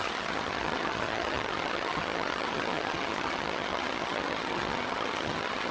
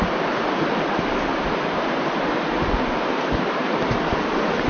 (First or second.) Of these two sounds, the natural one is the second